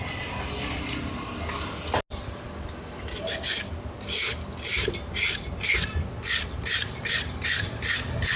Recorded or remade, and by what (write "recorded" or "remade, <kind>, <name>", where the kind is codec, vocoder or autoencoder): recorded